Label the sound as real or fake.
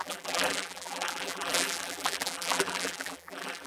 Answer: fake